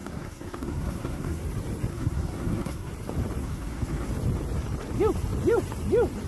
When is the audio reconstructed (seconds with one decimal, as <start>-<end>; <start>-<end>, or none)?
0.0-1.4; 1.9-2.9; 3.4-4.1